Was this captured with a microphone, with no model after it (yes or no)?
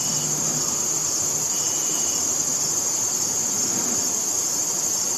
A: yes